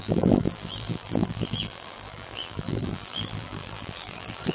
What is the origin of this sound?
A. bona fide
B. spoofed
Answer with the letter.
B